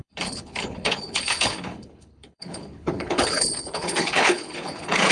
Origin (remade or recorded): remade